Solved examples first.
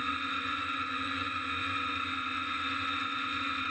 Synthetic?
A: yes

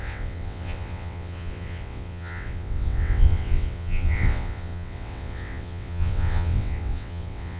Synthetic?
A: yes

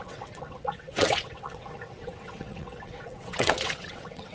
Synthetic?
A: yes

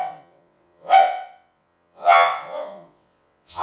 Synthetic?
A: yes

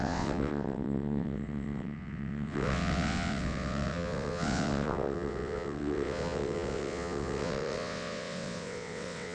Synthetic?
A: yes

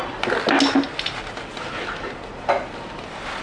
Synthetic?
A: no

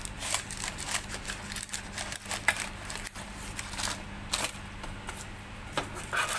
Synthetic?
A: no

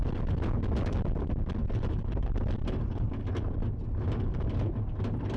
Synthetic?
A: no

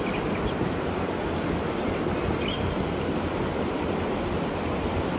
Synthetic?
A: no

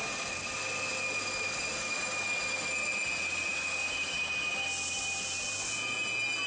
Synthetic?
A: no